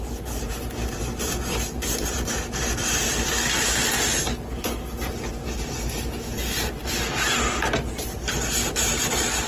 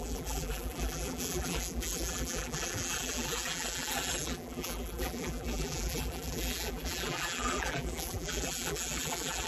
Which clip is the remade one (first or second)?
second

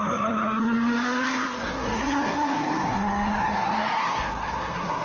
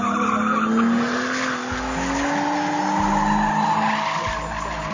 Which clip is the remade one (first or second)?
first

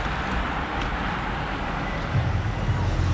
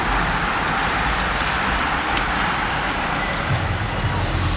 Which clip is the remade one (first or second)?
second